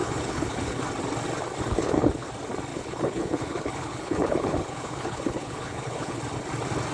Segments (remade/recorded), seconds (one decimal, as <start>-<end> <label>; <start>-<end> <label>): 0.0-0.8 remade; 0.8-1.7 recorded; 1.7-2.3 remade; 2.3-2.7 recorded; 2.7-6.2 remade; 6.2-6.9 recorded